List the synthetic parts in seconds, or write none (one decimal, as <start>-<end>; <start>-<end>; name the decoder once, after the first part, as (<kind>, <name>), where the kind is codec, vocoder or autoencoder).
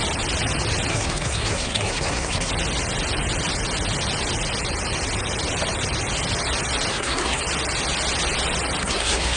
0.9-2.5 (codec, SNAC); 6.9-7.4; 8.8-9.4